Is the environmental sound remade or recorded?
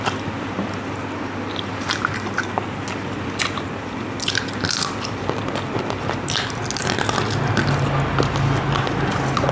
recorded